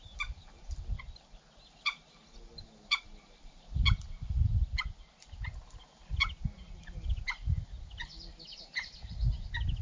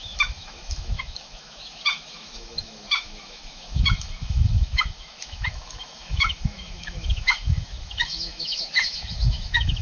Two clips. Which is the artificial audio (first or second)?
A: second